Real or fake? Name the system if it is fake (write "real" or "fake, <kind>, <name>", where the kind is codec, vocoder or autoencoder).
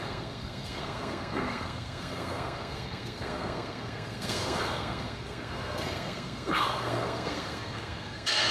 fake, codec, SNAC